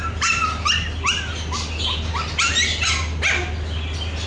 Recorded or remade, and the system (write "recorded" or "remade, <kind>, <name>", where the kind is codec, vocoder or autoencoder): recorded